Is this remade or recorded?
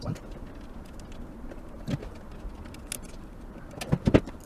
recorded